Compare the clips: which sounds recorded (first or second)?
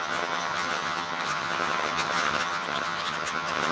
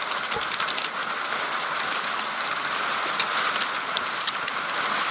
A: second